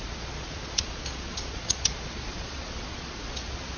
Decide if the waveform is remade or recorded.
remade